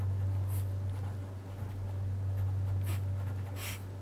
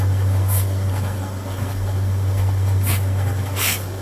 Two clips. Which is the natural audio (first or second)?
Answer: first